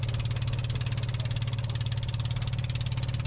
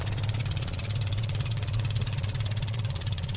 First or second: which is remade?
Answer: second